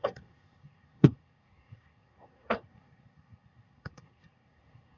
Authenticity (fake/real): fake